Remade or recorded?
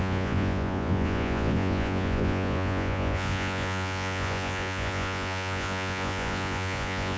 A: remade